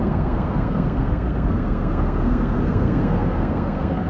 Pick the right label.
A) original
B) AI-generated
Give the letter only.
B